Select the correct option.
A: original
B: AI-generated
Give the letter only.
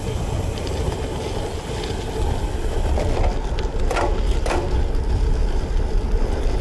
A